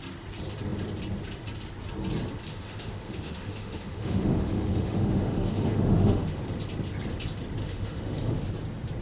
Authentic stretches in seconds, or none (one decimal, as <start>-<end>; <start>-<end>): 0.0-2.5; 6.4-7.6; 8.4-9.0